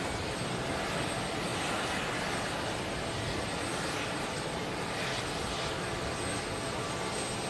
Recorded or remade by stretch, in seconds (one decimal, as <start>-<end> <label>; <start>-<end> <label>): 0.0-7.5 recorded

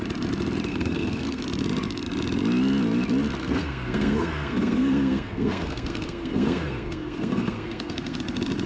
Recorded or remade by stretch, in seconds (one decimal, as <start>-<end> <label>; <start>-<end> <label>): 0.0-0.7 recorded; 0.7-1.4 remade; 1.4-3.4 recorded; 3.4-8.2 remade; 8.2-8.7 recorded

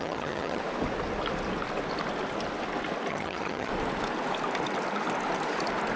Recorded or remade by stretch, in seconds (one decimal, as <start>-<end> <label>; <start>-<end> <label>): 0.0-0.6 remade; 0.6-3.1 recorded; 3.1-3.7 remade; 3.7-6.0 recorded

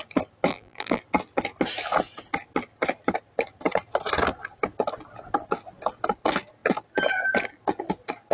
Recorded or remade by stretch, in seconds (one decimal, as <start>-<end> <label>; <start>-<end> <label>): 0.0-0.5 recorded; 0.5-1.0 remade; 1.0-8.3 recorded

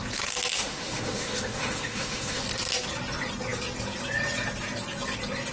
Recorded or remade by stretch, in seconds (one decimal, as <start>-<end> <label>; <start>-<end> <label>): 0.0-0.5 recorded; 0.5-2.4 remade; 2.4-5.5 recorded

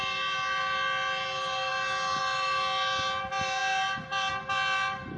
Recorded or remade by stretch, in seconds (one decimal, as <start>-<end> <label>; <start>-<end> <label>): 0.0-5.2 recorded

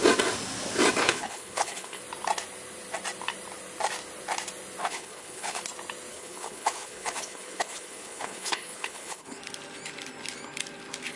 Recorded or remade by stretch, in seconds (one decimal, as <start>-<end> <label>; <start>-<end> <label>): 0.0-1.0 recorded; 1.0-2.0 remade; 2.0-4.8 recorded; 4.8-5.6 remade; 5.6-6.1 recorded; 6.1-9.4 remade; 9.4-11.2 recorded

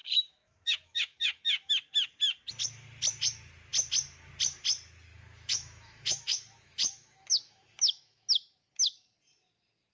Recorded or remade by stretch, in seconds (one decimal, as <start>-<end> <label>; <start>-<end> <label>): 0.0-1.7 remade; 1.7-5.1 recorded; 5.1-8.3 remade; 8.3-9.9 recorded